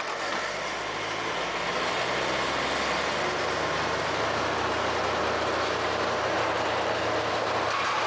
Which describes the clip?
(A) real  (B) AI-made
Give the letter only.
A